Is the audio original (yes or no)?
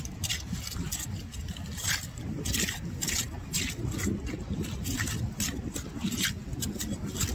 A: yes